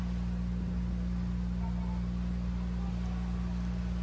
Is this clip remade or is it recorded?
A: recorded